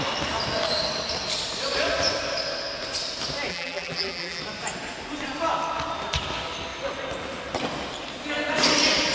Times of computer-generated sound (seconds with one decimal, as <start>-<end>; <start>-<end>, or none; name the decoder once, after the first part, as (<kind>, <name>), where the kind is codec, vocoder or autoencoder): 3.5-4.4 (vocoder, BigVGAN v2)